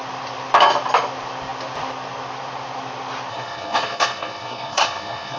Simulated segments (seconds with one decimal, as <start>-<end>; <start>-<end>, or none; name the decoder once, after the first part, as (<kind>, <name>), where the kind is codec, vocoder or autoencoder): 3.3-5.4 (codec, SNAC)